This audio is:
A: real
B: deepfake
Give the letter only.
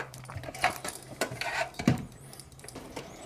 B